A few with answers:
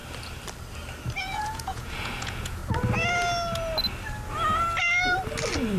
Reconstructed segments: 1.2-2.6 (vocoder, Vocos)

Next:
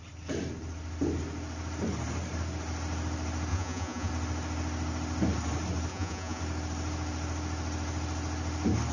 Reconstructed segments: 3.5-4.1 (vocoder, Vocos); 5.9-6.4

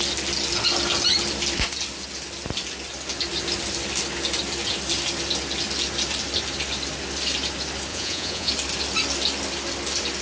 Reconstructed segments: 7.9-8.5 (vocoder, Vocos)

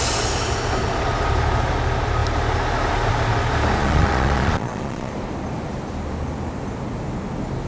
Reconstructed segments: 3.8-5.1 (vocoder, Vocos)

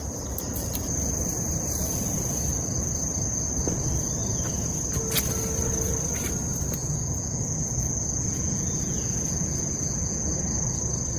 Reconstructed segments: 6.8-10.3 (vocoder, Vocos)